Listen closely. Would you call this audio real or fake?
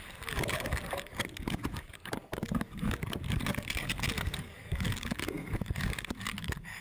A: fake